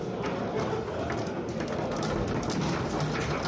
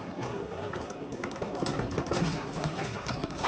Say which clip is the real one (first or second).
first